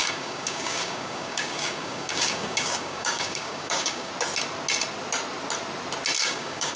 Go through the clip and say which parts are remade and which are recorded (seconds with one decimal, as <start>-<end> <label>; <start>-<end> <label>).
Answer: 0.0-4.1 remade; 4.1-6.2 recorded; 6.2-6.8 remade